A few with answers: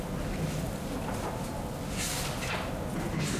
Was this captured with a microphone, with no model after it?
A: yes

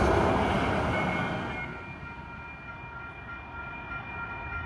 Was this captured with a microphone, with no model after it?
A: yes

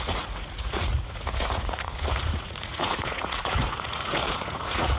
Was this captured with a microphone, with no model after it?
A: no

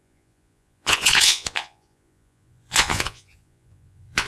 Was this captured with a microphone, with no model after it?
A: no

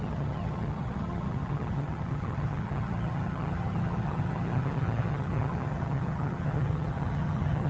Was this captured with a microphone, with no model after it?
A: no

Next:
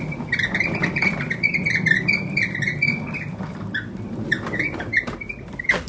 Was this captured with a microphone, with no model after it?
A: yes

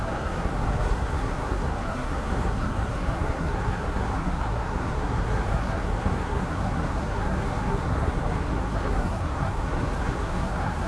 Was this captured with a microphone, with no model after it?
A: no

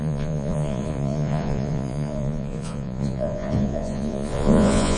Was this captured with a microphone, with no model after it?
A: no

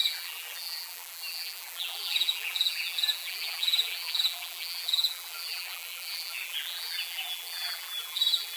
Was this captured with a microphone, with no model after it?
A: no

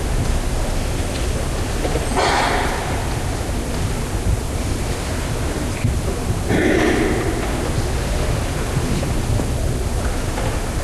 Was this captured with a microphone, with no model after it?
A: yes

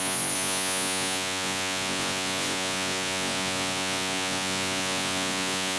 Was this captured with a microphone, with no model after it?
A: no